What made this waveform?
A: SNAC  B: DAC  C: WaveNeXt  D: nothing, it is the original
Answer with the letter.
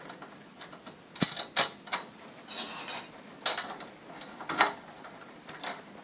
D